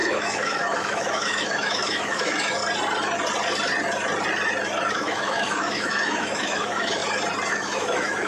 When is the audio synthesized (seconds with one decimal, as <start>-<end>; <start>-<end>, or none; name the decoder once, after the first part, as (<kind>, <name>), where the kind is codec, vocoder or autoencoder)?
0.0-2.6 (autoencoder, DAC-VAE); 4.9-7.0; 7.5-8.3